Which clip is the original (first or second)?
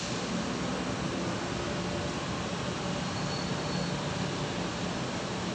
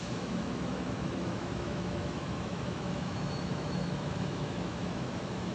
first